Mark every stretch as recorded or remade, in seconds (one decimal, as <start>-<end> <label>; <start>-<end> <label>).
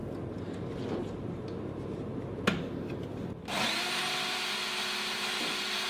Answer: 0.0-3.5 recorded; 3.5-4.0 remade; 4.0-5.9 recorded